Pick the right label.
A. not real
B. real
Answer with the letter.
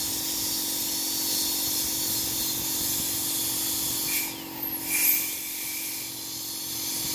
B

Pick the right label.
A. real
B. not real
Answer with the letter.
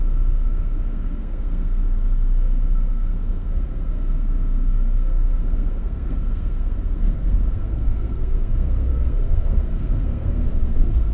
B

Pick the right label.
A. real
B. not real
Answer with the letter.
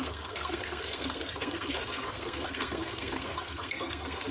B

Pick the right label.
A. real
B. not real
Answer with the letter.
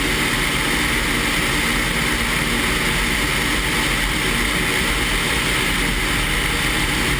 A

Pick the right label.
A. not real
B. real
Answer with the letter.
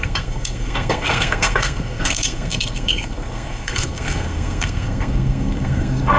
A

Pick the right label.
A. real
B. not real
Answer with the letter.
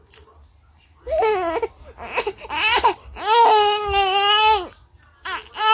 A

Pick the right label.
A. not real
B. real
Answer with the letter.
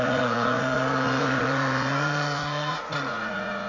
A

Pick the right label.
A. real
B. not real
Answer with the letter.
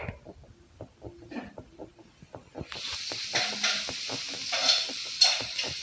A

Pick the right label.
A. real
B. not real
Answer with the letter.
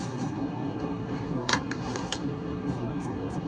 B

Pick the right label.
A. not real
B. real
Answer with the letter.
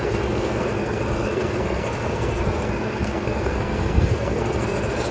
A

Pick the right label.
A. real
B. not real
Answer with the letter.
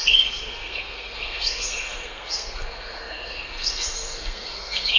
B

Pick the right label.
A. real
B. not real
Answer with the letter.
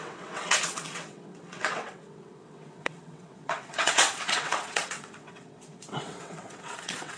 B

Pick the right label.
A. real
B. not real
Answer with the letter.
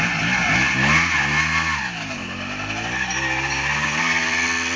A